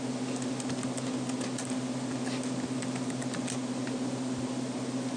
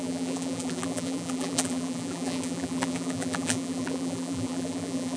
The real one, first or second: first